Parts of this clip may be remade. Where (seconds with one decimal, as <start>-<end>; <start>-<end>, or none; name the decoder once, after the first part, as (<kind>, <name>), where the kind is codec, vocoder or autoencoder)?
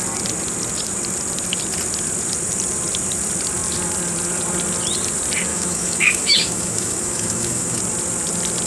5.5-7.8 (autoencoder, DAC-VAE)